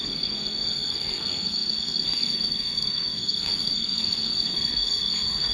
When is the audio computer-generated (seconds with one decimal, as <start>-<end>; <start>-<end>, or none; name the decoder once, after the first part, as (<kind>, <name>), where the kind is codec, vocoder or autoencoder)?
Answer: 0.0-5.5 (codec, SNAC)